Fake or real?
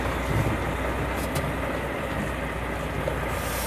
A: real